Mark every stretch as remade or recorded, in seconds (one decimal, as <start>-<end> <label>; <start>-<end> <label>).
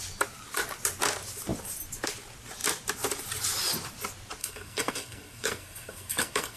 0.0-4.4 recorded; 4.4-6.6 remade